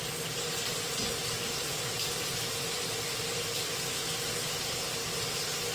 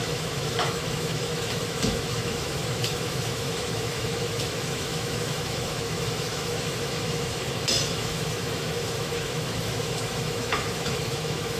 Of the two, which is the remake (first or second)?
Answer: second